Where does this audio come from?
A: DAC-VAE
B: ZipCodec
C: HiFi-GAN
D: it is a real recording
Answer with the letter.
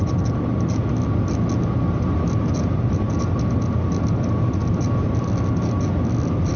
D